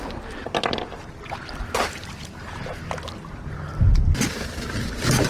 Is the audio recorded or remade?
recorded